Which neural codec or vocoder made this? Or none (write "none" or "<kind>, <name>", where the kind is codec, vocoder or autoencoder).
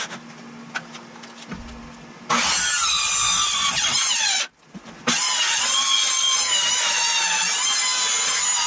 none